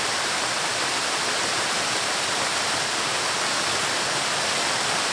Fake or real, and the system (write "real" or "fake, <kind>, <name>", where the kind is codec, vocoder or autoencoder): fake, vocoder, BigVGAN v2